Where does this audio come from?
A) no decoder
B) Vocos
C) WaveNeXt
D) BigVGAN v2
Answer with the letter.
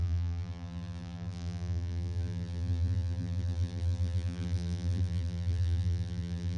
D